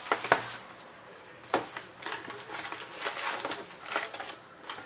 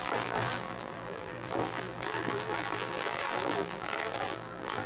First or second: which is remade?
second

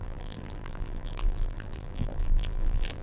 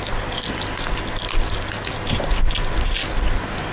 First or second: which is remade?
first